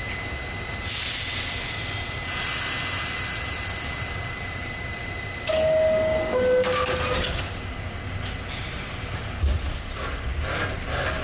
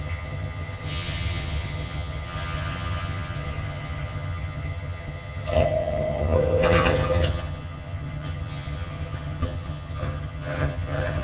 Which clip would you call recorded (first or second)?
first